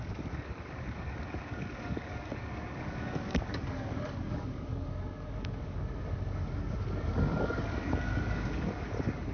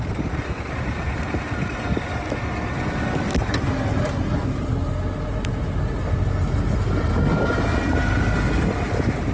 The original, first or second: second